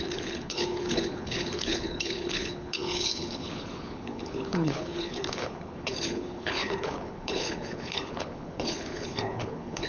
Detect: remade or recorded remade